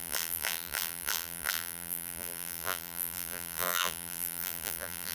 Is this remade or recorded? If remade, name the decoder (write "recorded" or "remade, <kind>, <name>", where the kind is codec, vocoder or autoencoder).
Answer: remade, vocoder, BigVGAN v2